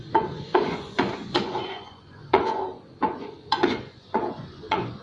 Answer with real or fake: fake